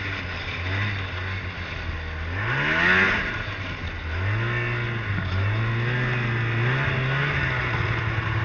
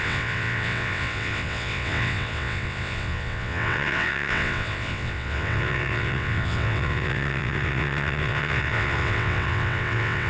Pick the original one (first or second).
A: first